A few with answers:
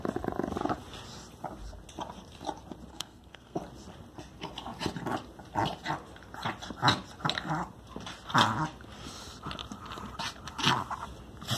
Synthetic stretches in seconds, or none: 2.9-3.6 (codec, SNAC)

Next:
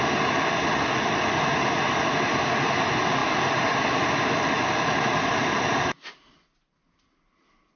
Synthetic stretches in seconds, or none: none

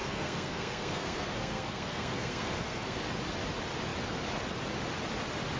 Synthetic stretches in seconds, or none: 0.0-3.0 (codec, SNAC)